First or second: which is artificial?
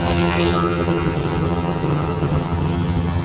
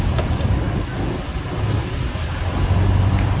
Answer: first